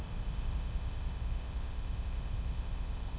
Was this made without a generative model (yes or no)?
no